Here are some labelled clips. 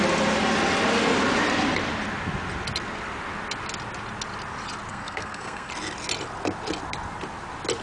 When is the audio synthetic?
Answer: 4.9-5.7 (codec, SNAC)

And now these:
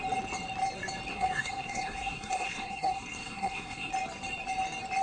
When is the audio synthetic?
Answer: 1.1-3.9 (codec, SNAC)

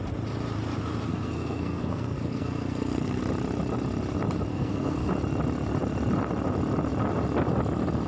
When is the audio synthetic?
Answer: 1.1-3.2 (codec, SNAC); 4.5-5.1

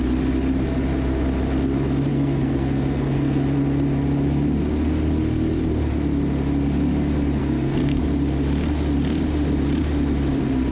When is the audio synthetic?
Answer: 2.1-3.4 (codec, SNAC); 7.4-8.0

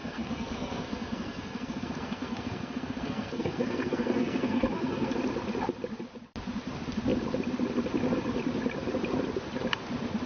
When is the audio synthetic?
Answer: 0.0-5.1 (codec, SNAC)

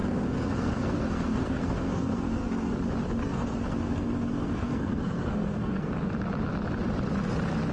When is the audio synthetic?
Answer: 0.0-2.7 (codec, SNAC); 3.2-5.9

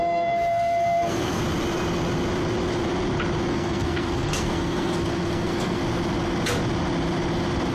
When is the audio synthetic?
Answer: 0.0-1.4 (codec, SNAC); 3.5-5.8